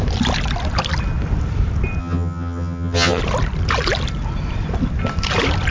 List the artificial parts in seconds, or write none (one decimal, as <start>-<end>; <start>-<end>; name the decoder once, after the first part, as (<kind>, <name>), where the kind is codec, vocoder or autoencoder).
2.0-3.2 (vocoder, HiFi-GAN)